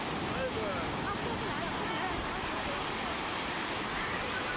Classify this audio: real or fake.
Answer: real